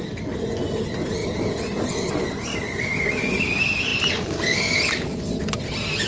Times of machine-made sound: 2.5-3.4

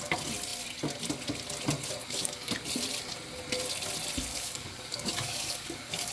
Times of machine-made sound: 2.0-2.5; 4.3-6.1

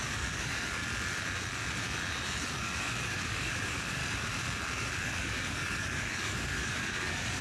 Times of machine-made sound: 0.0-0.8; 2.6-4.0; 5.0-7.4